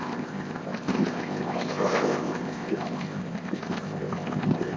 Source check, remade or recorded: remade